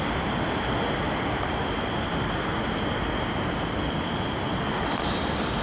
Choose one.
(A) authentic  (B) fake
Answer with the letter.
A